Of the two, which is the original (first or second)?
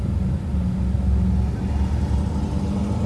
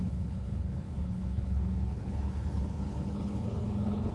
first